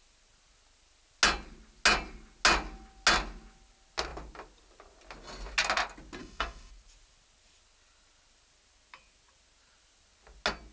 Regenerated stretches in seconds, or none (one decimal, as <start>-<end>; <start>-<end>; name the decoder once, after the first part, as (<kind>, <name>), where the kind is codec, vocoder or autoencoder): 6.2-6.7 (codec, SNAC)

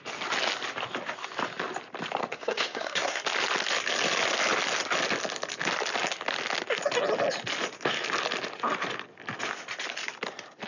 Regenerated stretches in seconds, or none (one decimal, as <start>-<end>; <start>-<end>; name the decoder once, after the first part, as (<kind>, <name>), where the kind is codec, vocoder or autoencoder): 2.3-3.2 (codec, SNAC)

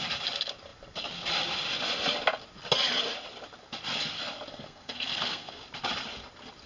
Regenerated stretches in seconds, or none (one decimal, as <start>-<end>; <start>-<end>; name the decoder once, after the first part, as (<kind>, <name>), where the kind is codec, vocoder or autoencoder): 4.5-5.6 (codec, SNAC)

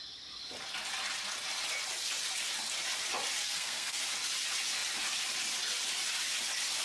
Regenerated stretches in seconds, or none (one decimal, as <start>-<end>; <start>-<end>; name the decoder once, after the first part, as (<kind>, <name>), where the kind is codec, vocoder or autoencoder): 3.4-4.0 (codec, SNAC)